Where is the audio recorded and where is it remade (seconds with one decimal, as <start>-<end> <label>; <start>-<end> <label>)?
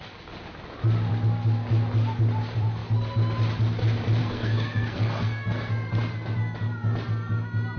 0.0-4.2 recorded; 4.2-5.9 remade; 5.9-7.8 recorded